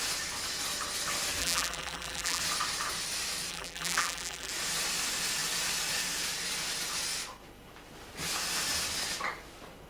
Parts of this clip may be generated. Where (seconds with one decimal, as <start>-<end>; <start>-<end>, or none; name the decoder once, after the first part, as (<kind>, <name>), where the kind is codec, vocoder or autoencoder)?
1.4-2.4 (vocoder, BigVGAN v2); 3.5-4.5